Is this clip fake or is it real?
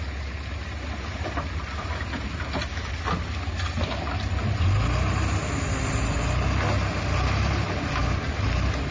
real